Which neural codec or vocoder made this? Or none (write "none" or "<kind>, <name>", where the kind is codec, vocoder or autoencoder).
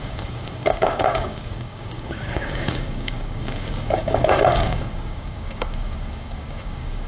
codec, DAC